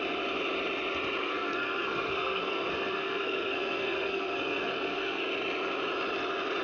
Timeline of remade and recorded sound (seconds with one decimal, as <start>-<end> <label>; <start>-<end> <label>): 0.0-1.2 recorded; 1.2-5.2 remade; 5.2-6.6 recorded